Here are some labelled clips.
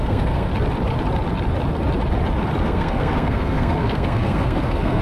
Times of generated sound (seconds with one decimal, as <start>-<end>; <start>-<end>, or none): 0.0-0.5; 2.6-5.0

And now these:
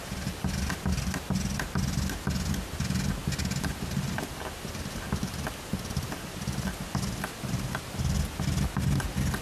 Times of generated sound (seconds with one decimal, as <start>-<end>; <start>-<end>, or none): none

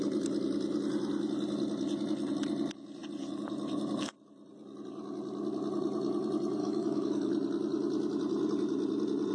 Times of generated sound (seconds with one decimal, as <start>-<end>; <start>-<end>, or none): 6.6-7.3

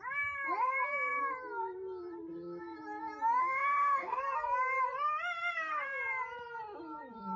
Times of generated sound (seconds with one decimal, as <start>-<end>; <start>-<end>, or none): 3.4-4.2

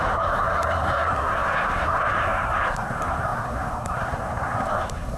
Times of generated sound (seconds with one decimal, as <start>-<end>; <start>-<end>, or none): 0.0-5.2